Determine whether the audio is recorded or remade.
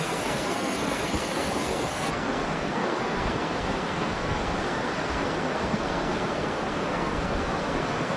remade